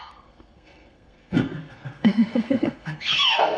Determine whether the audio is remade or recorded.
remade